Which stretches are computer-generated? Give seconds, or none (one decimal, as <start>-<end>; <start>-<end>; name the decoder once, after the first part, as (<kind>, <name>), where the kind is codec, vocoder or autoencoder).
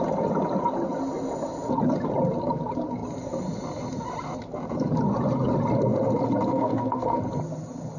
6.5-7.2 (codec, SNAC)